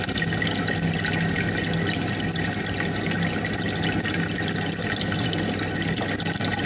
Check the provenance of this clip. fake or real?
real